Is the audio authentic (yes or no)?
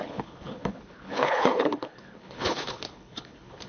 no